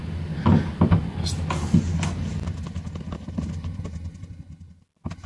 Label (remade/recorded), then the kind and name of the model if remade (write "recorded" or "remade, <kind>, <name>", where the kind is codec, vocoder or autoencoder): recorded